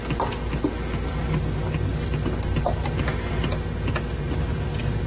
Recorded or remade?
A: recorded